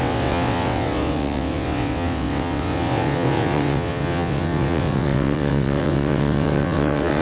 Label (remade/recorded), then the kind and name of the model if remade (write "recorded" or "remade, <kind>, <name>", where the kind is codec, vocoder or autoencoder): remade, vocoder, WaveNeXt